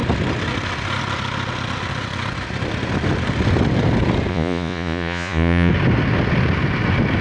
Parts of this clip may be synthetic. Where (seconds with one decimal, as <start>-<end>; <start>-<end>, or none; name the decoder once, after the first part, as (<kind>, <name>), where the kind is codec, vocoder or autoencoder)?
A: 4.3-5.7 (vocoder, Vocos)

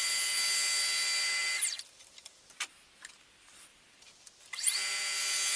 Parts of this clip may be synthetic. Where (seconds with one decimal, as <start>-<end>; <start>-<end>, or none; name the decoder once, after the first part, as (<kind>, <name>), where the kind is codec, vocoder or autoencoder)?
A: none

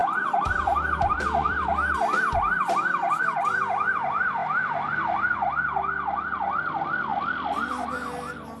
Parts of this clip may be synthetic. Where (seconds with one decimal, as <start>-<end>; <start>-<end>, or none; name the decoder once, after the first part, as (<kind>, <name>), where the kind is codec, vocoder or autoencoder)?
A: 0.0-1.7 (vocoder, BigVGAN v2); 3.0-3.6

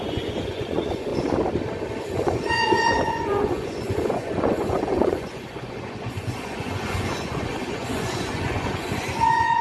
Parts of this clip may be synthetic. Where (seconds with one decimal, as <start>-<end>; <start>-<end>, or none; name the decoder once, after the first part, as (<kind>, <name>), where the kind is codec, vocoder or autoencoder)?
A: 0.0-1.1 (vocoder, Vocos); 2.0-9.6

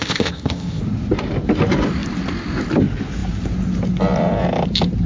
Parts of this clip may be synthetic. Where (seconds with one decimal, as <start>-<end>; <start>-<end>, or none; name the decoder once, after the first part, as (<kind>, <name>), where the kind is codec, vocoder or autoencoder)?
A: 0.0-0.8 (codec, ZipCodec)